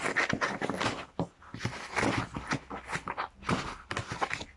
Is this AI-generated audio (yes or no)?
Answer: no